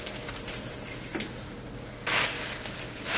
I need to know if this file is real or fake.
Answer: real